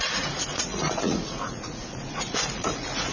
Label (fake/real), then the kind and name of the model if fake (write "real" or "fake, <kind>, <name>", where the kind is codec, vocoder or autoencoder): fake, vocoder, Vocos